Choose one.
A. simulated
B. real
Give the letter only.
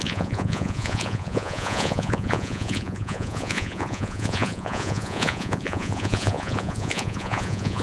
A